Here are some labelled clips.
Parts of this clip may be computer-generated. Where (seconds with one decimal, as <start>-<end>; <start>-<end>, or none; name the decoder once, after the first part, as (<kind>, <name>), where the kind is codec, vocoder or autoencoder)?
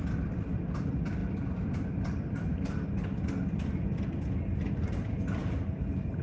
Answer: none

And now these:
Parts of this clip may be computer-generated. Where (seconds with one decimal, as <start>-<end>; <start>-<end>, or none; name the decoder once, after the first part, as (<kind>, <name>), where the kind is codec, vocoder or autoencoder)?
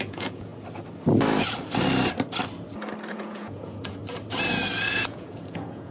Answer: 0.0-0.5 (vocoder, Vocos); 3.1-4.0; 4.9-5.9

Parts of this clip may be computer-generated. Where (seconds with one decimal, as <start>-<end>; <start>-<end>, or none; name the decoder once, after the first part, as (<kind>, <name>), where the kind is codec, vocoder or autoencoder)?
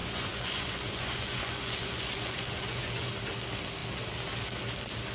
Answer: 0.0-3.1 (vocoder, Vocos)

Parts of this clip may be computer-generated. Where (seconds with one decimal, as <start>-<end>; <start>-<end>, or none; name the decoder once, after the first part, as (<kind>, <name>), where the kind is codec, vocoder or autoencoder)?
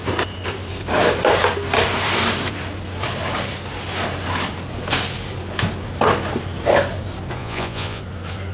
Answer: 7.4-8.0 (vocoder, Vocos)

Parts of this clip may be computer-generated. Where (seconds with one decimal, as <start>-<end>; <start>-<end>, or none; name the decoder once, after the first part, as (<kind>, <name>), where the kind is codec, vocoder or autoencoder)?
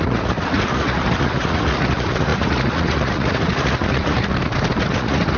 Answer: 0.0-4.3 (vocoder, Vocos); 4.8-5.4